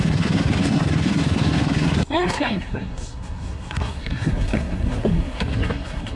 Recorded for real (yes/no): no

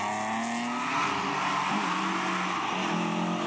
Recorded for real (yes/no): yes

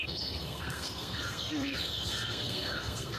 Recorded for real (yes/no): no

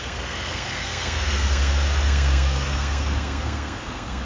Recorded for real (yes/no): no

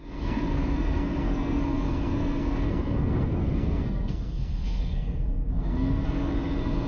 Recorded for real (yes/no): no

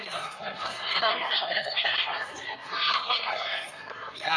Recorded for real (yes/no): no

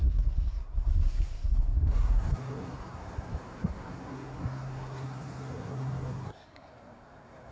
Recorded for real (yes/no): no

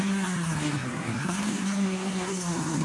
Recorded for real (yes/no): no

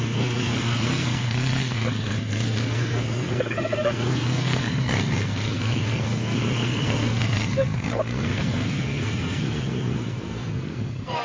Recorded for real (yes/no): no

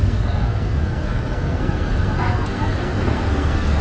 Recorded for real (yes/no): no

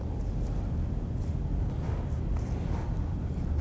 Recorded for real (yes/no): yes